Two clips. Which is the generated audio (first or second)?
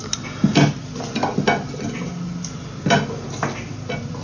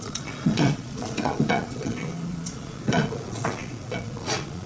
second